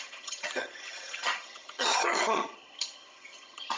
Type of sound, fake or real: fake